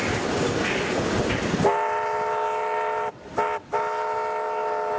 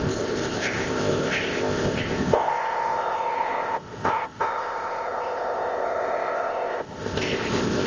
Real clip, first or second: first